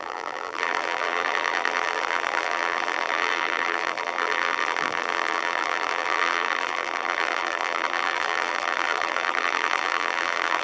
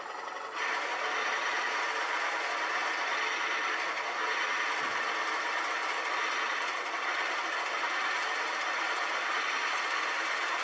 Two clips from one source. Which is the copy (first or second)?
first